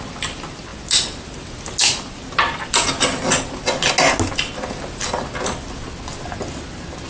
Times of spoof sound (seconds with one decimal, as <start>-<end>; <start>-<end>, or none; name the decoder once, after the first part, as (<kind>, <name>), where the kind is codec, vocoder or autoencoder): none